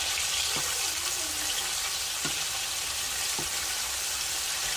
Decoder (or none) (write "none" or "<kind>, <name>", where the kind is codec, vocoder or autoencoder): none